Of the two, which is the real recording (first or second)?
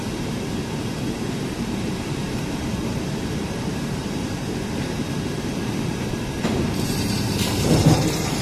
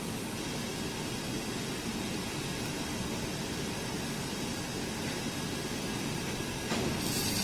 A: second